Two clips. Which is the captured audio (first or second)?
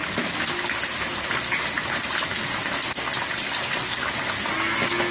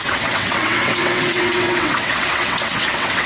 first